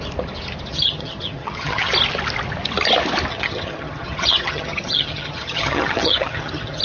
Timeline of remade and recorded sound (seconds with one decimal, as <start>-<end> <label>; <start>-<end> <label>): 0.0-0.7 recorded; 0.7-1.9 remade; 1.9-3.3 recorded; 3.3-6.8 remade